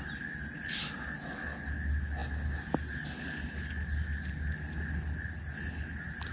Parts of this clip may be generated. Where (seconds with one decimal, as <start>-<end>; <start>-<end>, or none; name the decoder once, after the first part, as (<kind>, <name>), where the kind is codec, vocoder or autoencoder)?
none